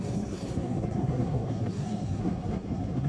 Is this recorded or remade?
remade